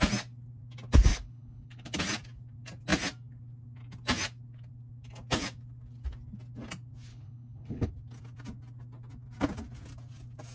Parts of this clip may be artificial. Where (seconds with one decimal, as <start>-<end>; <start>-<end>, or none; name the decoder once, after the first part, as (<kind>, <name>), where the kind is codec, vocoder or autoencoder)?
1.1-2.0 (codec, HILCodec); 7.1-7.9